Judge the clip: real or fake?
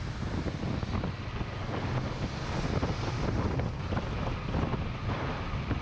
real